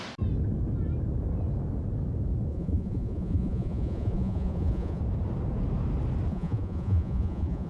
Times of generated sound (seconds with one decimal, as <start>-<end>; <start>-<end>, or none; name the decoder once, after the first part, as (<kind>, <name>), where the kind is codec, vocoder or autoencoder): 2.5-5.0 (vocoder, Vocos); 6.3-7.7